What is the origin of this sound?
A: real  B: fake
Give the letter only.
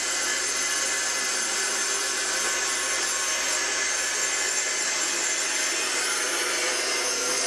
A